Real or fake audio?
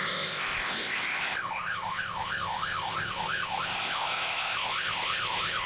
fake